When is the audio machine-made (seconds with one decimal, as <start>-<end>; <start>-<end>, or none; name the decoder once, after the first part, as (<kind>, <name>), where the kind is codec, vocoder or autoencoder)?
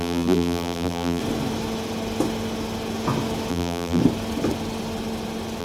0.0-1.2 (vocoder, BigVGAN v2); 3.5-4.0